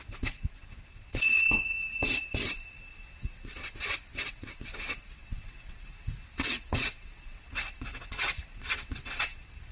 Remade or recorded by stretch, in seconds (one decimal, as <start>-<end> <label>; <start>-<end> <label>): 0.0-9.7 remade